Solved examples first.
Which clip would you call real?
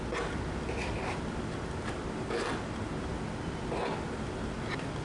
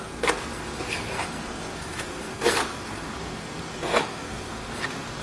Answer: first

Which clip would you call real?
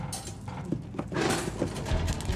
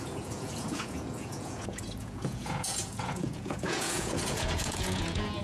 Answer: first